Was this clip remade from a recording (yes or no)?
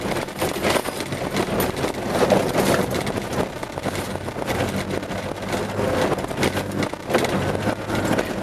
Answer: no